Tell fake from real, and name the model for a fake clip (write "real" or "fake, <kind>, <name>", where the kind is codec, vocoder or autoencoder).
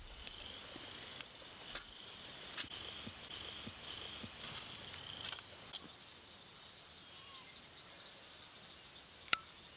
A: real